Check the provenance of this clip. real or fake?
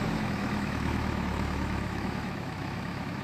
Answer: fake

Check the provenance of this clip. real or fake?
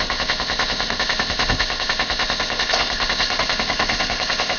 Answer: fake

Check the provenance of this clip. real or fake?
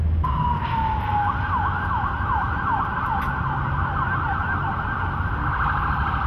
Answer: real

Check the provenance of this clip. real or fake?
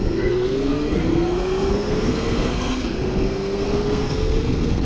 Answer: fake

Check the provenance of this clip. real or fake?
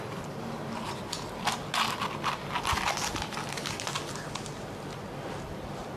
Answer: real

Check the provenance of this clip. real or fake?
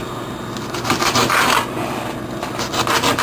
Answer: real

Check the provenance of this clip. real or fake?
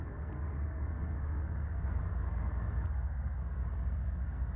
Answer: fake